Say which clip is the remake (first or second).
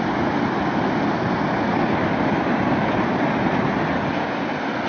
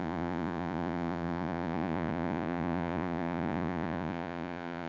second